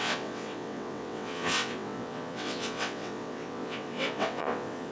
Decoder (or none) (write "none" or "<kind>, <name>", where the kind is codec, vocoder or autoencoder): vocoder, WaveNeXt